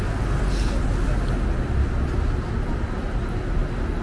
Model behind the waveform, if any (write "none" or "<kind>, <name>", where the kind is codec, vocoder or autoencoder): none